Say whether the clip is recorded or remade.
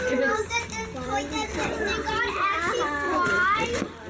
remade